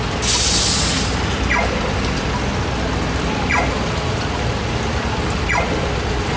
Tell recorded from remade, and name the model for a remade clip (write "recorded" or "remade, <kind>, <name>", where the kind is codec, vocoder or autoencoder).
recorded